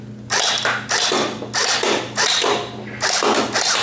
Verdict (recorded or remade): recorded